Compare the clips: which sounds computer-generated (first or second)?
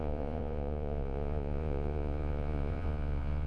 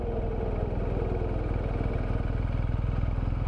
first